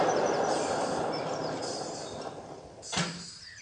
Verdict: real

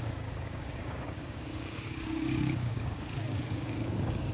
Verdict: fake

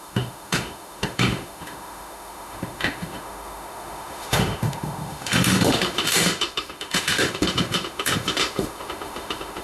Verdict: fake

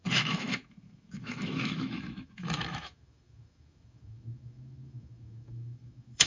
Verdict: fake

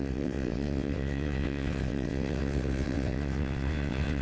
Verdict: fake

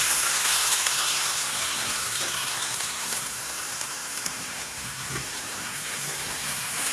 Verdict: fake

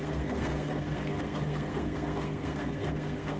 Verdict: fake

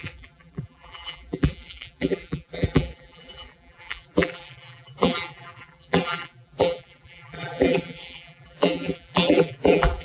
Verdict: fake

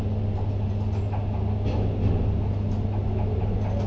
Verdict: real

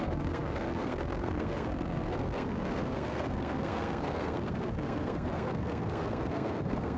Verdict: fake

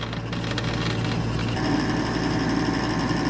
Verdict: real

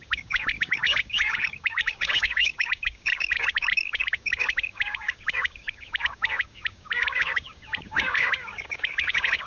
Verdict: fake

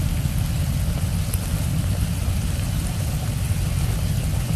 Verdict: real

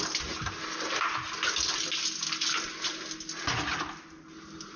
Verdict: real